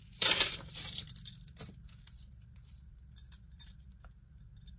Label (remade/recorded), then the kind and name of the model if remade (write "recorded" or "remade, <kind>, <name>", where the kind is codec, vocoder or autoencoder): remade, vocoder, BigVGAN v2